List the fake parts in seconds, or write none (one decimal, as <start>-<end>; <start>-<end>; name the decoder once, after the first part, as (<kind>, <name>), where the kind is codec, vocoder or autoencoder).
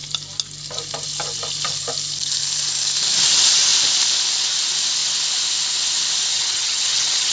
6.3-7.3 (vocoder, HiFi-GAN)